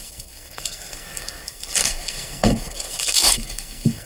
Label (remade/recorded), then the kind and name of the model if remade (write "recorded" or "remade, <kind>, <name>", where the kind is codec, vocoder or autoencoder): remade, codec, SNAC